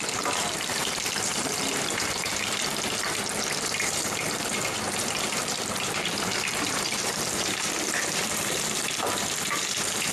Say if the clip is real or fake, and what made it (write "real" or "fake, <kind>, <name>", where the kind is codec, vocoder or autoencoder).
fake, vocoder, BigVGAN v2